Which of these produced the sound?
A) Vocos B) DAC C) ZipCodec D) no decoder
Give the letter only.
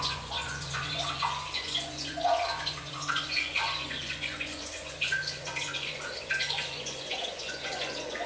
A